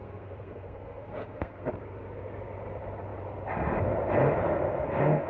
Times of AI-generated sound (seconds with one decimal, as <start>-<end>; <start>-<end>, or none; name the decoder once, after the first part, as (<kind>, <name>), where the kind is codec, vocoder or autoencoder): 0.0-1.7 (codec, SNAC); 4.7-5.3